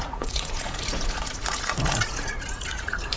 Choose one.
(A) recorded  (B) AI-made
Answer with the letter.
B